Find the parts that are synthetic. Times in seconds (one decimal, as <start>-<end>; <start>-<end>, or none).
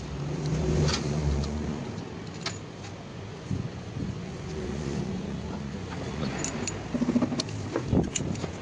0.9-1.8; 3.1-6.3